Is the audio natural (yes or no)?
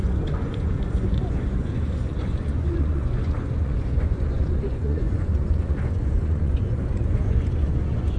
no